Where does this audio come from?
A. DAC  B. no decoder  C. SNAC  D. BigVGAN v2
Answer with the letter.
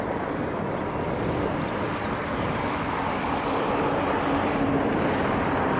B